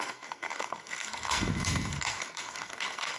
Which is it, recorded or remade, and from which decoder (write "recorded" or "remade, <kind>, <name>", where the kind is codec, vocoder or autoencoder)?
remade, codec, SNAC